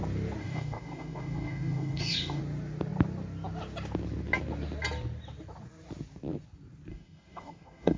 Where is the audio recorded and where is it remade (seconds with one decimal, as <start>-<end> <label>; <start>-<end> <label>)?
0.0-0.4 recorded; 0.4-2.4 remade; 2.4-6.9 recorded; 6.9-8.0 remade